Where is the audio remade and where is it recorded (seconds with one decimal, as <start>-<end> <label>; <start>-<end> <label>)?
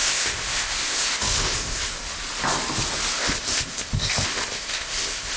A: 0.0-1.8 remade; 1.8-3.1 recorded; 3.1-5.4 remade